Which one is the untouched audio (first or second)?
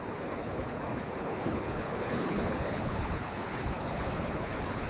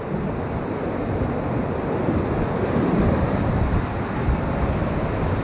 second